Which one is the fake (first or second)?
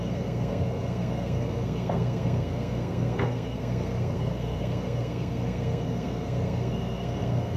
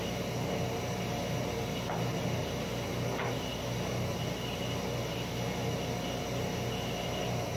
first